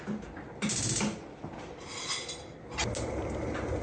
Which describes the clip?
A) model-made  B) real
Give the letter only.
B